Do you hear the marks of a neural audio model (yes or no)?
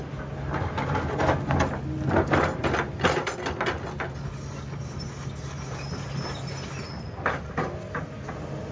no